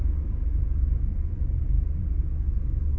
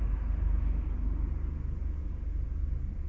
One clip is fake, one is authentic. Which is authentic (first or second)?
second